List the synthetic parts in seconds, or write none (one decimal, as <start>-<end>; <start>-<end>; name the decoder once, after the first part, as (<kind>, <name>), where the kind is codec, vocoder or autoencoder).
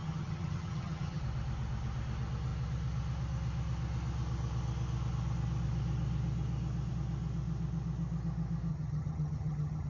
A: 0.0-1.2 (vocoder, HiFi-GAN); 8.7-9.9